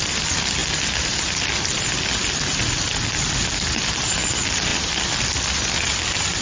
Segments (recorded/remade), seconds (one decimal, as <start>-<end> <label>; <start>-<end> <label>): 0.0-6.4 recorded

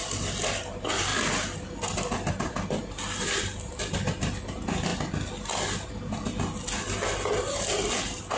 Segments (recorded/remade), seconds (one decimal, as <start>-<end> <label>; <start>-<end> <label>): 0.0-8.4 recorded

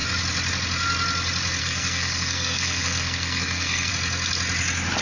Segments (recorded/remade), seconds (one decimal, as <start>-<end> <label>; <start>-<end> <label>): 0.0-1.6 recorded; 1.6-3.9 remade; 3.9-5.0 recorded

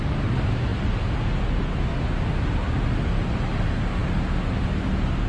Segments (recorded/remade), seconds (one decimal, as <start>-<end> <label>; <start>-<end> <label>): 0.0-5.3 recorded

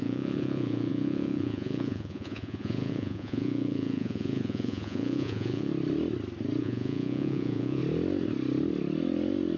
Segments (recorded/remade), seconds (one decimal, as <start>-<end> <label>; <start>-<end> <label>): 0.0-5.7 remade; 5.7-6.6 recorded; 6.6-7.8 remade; 7.8-9.6 recorded

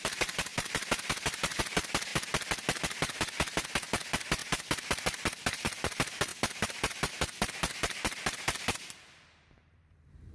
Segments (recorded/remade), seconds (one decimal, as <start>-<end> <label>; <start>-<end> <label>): 0.0-2.1 remade; 2.1-2.8 recorded; 2.8-10.3 remade